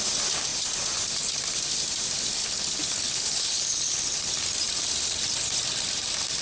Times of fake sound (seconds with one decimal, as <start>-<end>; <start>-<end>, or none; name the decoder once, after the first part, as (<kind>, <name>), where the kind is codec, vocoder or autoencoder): 2.4-4.3 (codec, HILCodec)